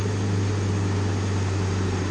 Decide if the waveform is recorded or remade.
recorded